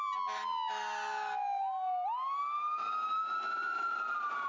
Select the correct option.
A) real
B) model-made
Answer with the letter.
A